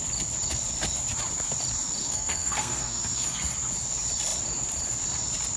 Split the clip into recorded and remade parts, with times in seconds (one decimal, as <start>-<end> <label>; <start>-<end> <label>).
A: 0.0-2.0 recorded; 2.0-3.4 remade; 3.4-5.6 recorded